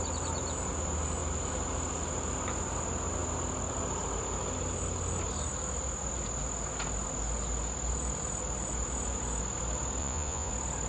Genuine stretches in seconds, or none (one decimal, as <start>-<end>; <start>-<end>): 0.0-10.0; 10.5-10.9